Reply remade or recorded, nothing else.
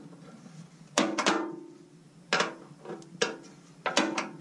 recorded